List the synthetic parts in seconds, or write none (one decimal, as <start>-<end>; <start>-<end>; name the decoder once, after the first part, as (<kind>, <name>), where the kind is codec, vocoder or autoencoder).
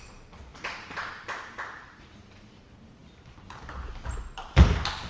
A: none